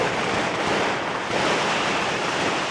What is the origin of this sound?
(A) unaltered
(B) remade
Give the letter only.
B